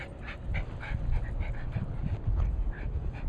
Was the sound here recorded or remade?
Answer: recorded